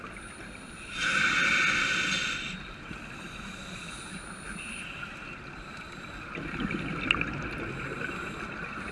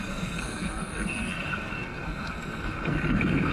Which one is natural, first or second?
first